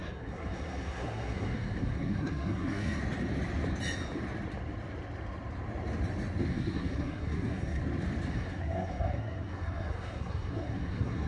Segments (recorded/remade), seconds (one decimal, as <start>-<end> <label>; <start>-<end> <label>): 0.0-3.0 remade; 3.0-6.5 recorded; 6.5-7.8 remade; 7.8-8.3 recorded; 8.3-11.3 remade